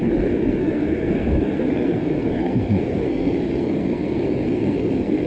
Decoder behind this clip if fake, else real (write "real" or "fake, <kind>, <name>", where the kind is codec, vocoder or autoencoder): fake, codec, SNAC